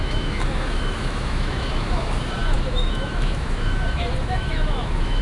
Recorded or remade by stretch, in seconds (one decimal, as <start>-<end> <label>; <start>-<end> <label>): 0.0-5.2 remade